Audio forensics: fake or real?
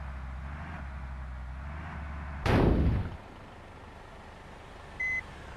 real